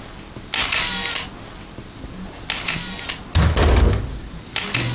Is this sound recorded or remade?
recorded